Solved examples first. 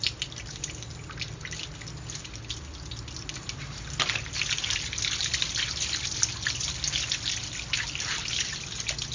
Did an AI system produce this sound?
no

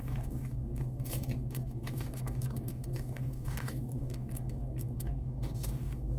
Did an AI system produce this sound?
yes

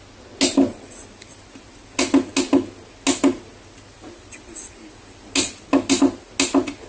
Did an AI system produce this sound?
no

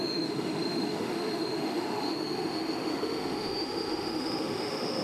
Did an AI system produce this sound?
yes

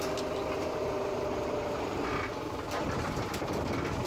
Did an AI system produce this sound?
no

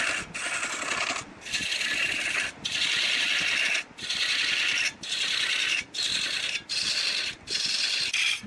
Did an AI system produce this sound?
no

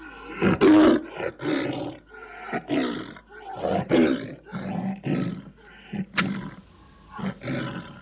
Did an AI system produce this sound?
no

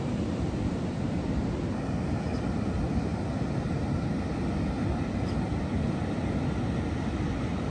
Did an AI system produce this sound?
no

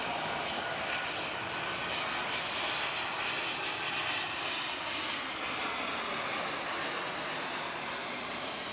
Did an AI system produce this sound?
no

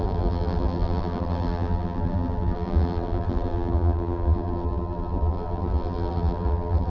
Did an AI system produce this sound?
yes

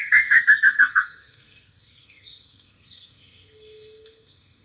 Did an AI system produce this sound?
yes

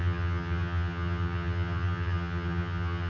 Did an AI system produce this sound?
yes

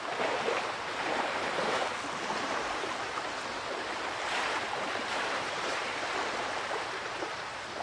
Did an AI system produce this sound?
yes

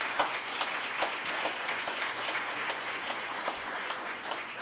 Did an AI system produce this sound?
yes